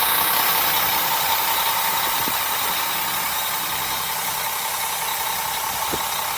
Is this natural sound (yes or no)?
yes